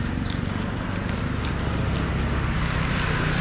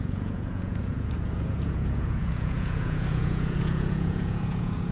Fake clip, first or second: second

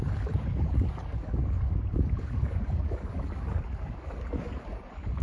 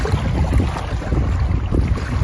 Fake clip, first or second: first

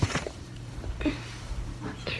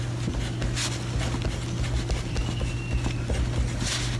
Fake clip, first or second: first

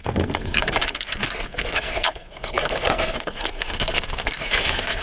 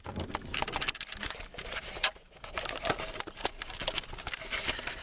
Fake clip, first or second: first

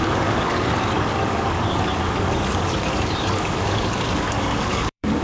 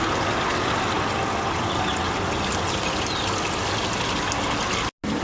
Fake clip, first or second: first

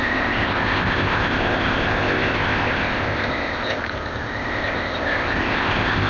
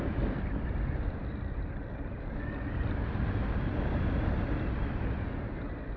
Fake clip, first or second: first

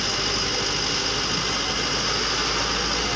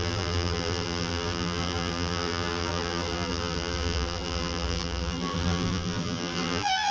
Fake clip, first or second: second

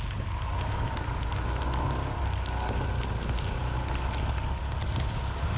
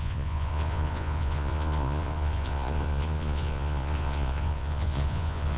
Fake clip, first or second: second